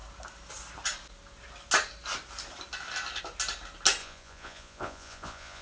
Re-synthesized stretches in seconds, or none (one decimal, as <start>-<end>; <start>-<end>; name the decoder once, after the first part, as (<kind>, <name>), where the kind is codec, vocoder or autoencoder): 4.0-5.6 (vocoder, Vocos)